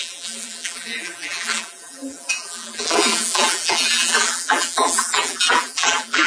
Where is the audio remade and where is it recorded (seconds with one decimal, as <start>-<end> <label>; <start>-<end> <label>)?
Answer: 0.0-6.3 remade